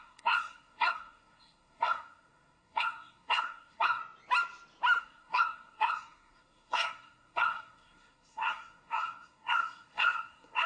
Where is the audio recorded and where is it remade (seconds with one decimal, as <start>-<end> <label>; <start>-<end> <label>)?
0.0-4.0 remade; 4.0-5.0 recorded; 5.0-10.7 remade